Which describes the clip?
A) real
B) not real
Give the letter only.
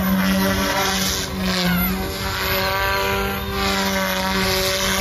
A